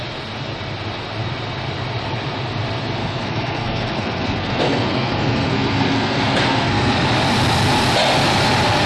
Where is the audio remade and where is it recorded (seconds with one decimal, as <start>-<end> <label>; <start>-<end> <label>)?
0.0-3.0 recorded; 3.0-6.9 remade; 6.9-8.9 recorded